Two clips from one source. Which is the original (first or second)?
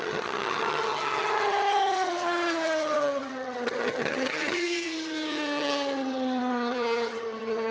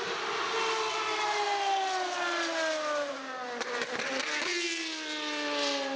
second